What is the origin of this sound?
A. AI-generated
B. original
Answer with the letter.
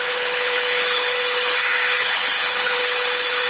A